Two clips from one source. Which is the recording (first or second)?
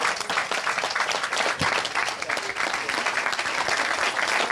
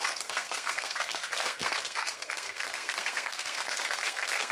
first